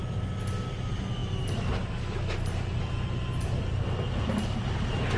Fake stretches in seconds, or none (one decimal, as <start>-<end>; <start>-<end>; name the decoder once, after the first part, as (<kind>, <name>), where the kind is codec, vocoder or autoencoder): none